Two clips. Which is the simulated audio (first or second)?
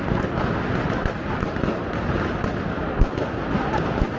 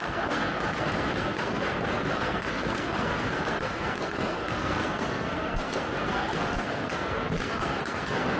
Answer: second